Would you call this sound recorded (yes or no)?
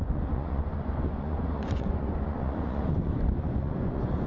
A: no